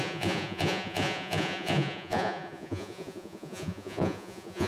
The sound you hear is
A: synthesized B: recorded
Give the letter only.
A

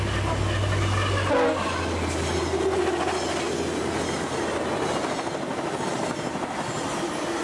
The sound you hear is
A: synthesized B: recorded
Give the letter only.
B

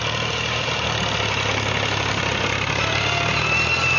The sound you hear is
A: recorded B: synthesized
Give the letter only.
A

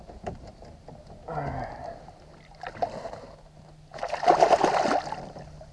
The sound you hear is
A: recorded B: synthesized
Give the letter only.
A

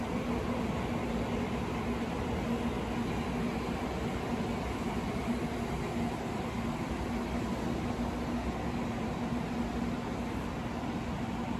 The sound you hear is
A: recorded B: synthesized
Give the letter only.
A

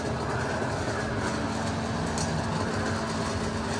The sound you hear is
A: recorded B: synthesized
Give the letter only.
A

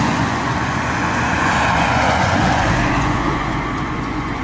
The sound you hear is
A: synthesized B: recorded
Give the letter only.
A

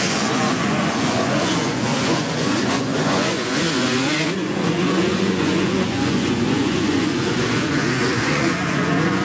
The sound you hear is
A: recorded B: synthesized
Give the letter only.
B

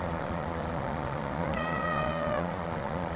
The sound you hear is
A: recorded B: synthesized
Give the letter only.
B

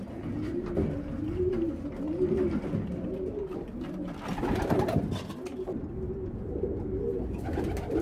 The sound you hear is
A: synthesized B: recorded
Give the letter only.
B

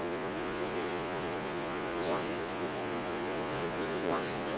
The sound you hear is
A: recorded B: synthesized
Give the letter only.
B